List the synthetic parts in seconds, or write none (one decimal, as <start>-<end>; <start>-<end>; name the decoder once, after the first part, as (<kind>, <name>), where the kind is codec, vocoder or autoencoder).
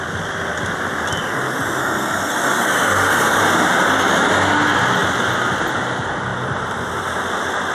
1.8-3.4 (codec, SNAC)